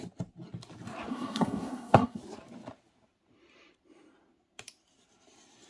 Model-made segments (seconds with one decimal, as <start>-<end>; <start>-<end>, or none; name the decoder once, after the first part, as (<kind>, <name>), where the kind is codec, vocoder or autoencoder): 1.1-2.2 (codec, SNAC)